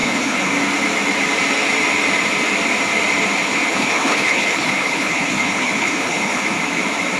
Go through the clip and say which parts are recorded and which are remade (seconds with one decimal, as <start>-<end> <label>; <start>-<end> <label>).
0.0-0.5 remade; 0.5-3.7 recorded; 3.7-6.4 remade; 6.4-7.2 recorded